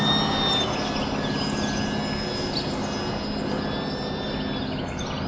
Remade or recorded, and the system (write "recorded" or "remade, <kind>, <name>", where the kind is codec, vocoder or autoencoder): recorded